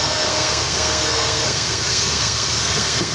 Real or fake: fake